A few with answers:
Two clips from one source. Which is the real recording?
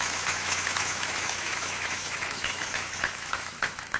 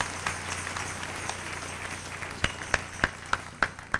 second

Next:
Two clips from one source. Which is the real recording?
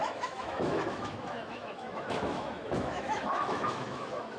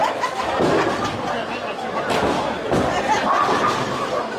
second